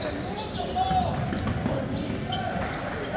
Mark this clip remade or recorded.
recorded